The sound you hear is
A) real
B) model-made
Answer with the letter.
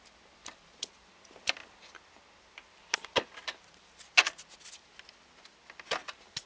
A